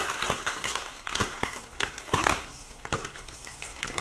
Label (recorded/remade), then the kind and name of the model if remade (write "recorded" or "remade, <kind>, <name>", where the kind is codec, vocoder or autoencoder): remade, codec, SNAC